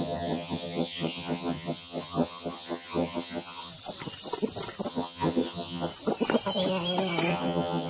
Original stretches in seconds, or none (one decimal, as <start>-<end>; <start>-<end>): 3.7-4.9; 5.9-7.3